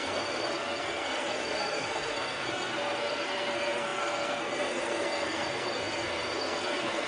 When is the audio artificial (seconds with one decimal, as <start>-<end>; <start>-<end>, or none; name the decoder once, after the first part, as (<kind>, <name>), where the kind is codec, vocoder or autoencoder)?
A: 0.0-7.1 (codec, SNAC)